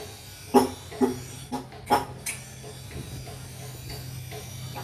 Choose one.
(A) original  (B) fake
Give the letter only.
A